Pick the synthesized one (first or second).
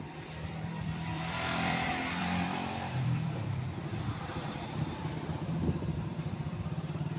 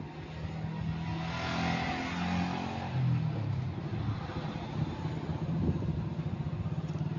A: first